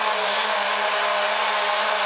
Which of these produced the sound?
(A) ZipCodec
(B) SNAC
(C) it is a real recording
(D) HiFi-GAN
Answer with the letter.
C